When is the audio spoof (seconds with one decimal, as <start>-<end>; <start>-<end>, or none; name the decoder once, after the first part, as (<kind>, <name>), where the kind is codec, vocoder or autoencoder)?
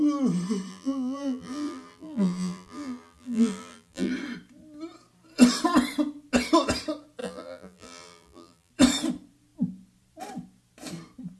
0.7-4.1 (vocoder, BigVGAN v2); 7.2-8.7